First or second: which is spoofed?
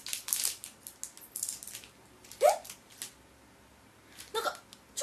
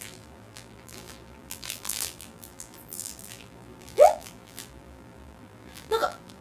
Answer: second